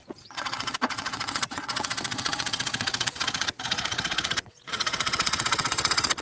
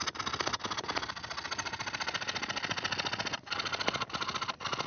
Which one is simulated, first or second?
first